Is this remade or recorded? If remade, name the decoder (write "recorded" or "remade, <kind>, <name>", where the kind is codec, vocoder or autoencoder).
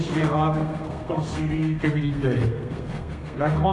remade, codec, SNAC